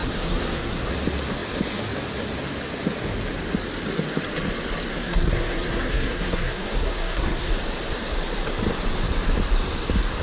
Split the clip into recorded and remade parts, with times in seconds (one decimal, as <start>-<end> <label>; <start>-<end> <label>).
0.0-0.9 remade; 0.9-4.9 recorded; 4.9-7.5 remade; 7.5-10.2 recorded